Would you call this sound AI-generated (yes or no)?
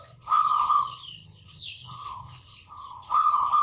yes